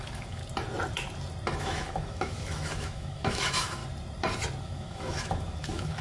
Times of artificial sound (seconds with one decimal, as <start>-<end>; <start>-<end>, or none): 0.0-0.4; 1.6-3.8; 4.6-6.0

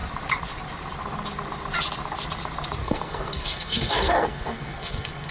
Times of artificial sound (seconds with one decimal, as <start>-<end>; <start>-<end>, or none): 2.8-5.3

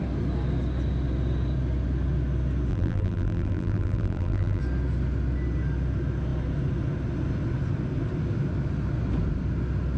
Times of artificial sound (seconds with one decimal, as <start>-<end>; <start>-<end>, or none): 2.7-4.6

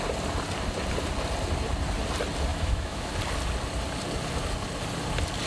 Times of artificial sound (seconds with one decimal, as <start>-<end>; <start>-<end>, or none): 2.5-3.1

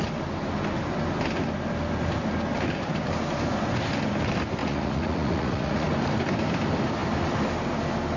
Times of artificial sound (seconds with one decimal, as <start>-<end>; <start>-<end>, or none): 4.6-5.9